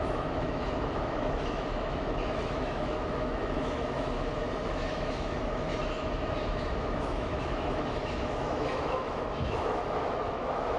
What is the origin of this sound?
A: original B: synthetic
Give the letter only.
B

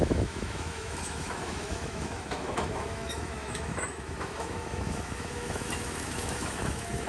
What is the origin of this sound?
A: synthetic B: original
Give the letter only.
A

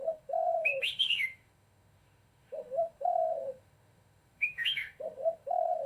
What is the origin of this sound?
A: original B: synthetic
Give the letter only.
B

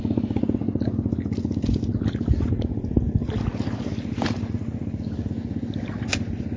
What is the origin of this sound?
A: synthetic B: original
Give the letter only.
B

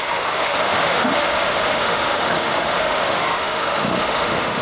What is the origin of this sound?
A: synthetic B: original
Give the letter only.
A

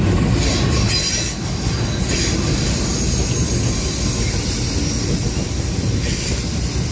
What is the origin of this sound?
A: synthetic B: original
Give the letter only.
B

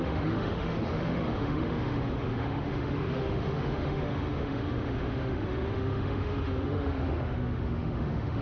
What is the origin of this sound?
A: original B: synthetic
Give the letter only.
B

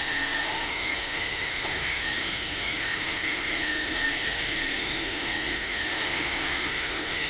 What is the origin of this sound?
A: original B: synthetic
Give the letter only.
B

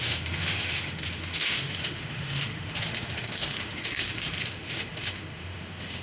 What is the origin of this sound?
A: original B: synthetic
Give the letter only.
B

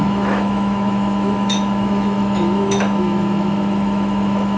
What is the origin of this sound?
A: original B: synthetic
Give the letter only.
B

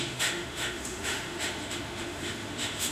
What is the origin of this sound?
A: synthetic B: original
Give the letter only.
A